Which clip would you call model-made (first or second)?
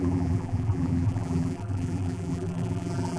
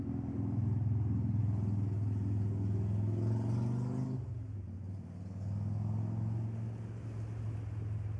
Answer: first